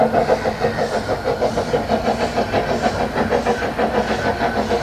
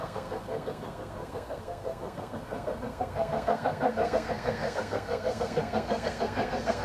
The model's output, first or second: second